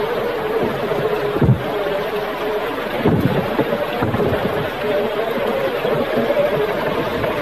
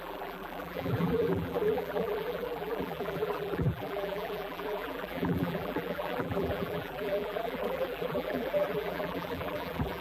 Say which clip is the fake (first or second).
second